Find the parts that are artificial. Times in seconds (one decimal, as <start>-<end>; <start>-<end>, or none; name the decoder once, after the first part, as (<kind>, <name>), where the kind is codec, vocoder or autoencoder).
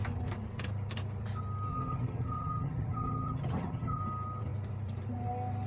1.7-4.0 (vocoder, HiFi-GAN)